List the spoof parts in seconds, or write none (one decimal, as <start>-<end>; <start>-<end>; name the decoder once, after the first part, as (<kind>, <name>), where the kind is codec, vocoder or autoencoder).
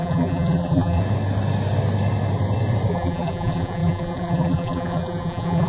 0.0-1.0 (vocoder, BigVGAN v2); 2.9-5.7